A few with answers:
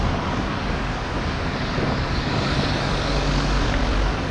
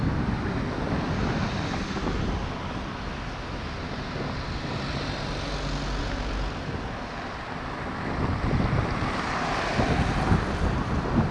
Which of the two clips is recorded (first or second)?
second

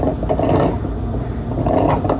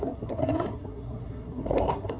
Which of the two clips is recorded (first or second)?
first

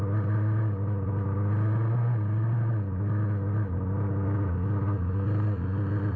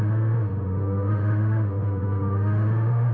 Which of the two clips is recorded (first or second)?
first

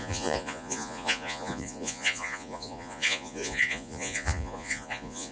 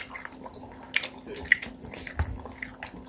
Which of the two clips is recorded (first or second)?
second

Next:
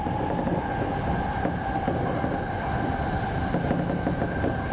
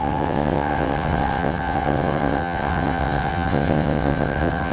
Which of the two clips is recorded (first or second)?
first